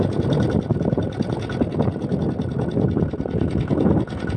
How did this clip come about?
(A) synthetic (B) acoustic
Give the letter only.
B